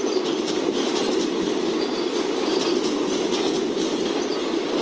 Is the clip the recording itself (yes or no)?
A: yes